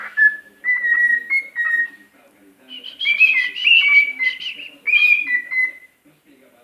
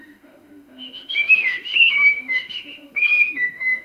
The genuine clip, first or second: first